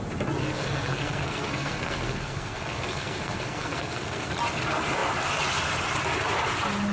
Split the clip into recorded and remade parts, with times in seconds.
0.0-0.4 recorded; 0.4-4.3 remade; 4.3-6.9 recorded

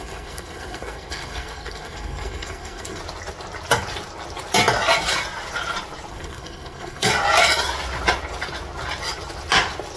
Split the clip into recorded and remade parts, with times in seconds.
0.0-3.0 remade; 3.0-6.1 recorded; 6.1-7.1 remade; 7.1-10.0 recorded

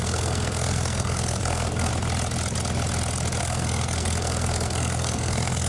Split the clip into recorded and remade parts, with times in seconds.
0.0-1.9 remade; 1.9-3.4 recorded; 3.4-5.7 remade

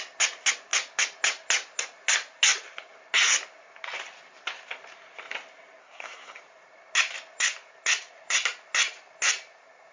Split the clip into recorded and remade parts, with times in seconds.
0.0-5.8 recorded; 5.8-6.4 remade; 6.4-9.9 recorded

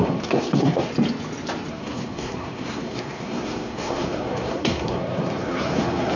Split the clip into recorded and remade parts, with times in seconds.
0.0-0.9 remade; 0.9-1.7 recorded; 1.7-6.2 remade

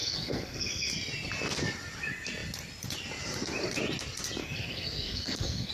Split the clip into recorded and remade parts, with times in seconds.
0.0-0.9 remade; 0.9-4.4 recorded; 4.4-5.7 remade

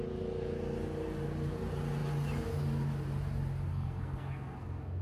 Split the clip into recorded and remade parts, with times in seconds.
0.0-3.7 recorded; 3.7-5.0 remade